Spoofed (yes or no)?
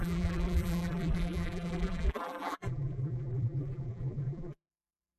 yes